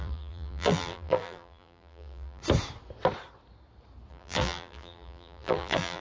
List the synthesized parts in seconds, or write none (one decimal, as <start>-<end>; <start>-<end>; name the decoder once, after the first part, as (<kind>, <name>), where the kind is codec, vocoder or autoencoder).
0.0-2.4 (vocoder, BigVGAN v2); 4.1-6.0